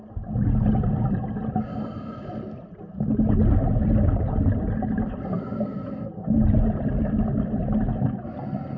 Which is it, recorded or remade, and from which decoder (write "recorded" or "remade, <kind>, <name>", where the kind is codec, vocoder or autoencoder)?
recorded